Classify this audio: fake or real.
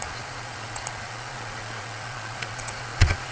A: fake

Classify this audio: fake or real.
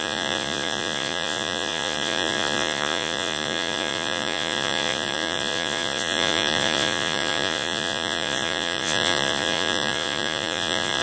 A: fake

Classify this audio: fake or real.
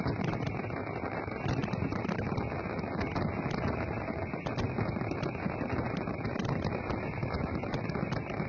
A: real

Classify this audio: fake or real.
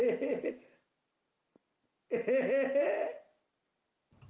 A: real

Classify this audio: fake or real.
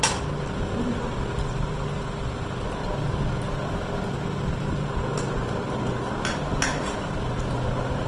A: real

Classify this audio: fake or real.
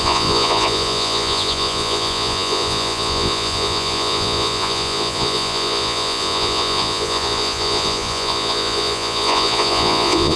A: fake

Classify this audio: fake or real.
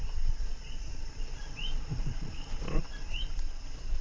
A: fake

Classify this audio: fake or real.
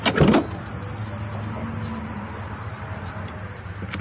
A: real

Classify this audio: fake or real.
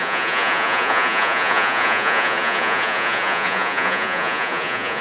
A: fake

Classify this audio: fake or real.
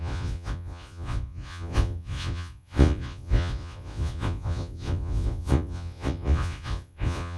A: fake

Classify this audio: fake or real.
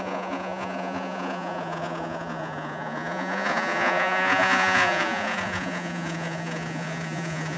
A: fake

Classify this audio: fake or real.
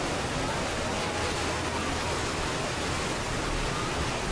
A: real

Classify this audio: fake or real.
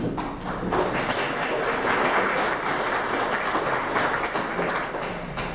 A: real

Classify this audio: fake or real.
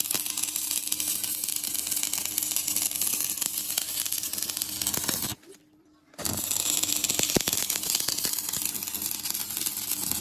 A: real